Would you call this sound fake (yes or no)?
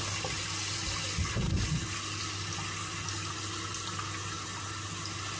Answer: no